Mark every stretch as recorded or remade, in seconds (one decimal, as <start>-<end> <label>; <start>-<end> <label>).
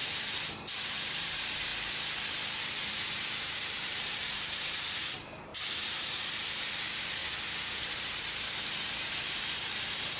0.0-1.7 remade; 1.7-3.1 recorded; 3.1-7.2 remade; 7.2-7.8 recorded; 7.8-10.2 remade